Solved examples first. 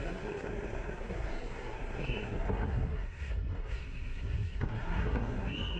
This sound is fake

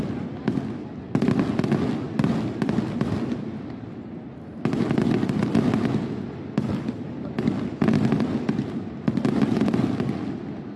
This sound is real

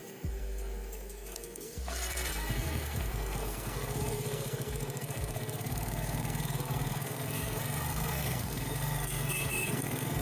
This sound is fake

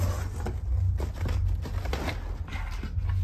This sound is real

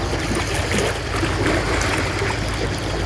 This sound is real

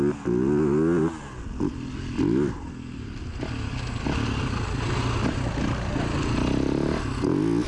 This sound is real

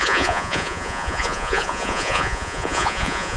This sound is fake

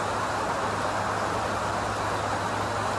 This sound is real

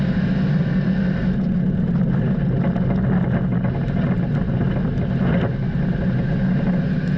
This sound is real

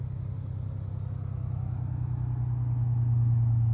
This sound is real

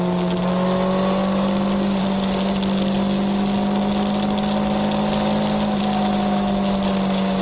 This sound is real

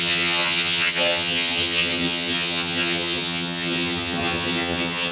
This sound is fake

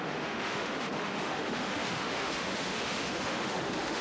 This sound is fake